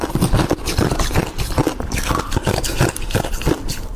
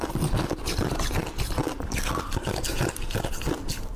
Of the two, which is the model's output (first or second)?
first